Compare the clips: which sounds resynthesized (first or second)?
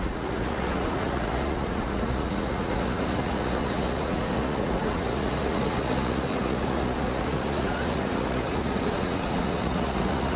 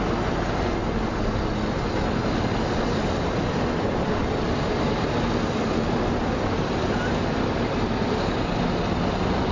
first